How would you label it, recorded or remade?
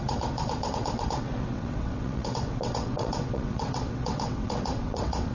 remade